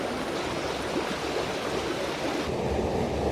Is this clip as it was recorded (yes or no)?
yes